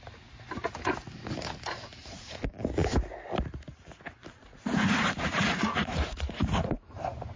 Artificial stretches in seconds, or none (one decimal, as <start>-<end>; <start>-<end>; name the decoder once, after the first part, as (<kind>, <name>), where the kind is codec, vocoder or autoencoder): 2.0-2.5 (vocoder, Vocos); 4.4-7.0